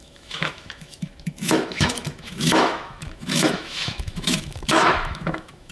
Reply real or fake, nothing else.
fake